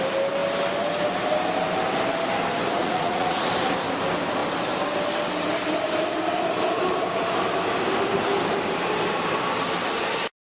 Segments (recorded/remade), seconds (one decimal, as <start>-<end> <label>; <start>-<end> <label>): 0.0-2.8 recorded; 2.8-3.5 remade; 3.5-10.6 recorded